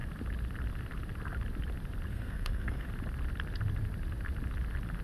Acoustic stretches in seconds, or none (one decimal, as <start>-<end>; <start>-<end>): 0.0-2.1; 2.9-5.0